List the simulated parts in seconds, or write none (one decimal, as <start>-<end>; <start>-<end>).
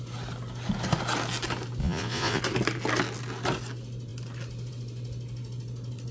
1.8-2.4